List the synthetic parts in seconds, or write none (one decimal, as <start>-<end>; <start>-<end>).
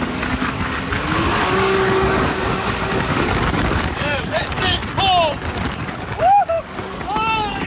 0.0-4.8; 5.5-7.7